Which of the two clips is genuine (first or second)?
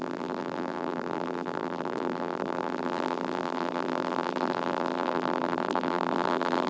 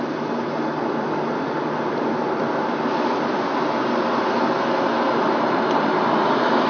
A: second